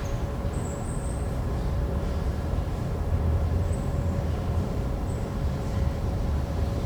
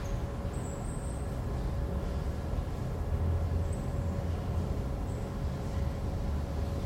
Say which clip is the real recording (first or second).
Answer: second